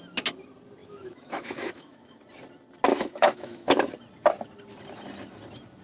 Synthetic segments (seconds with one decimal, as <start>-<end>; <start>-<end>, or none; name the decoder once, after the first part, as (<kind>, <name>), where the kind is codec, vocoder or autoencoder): 0.8-2.2 (autoencoder, DAC-VAE); 2.9-3.9

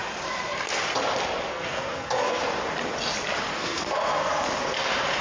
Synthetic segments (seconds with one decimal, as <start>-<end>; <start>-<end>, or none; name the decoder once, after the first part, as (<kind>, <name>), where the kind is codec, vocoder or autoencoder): 1.5-2.4 (codec, SNAC); 3.5-4.3

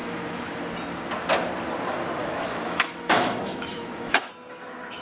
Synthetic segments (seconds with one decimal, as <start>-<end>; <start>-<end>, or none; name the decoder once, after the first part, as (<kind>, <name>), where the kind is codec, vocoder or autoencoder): 0.0-0.6 (autoencoder, DAC-VAE); 2.2-4.3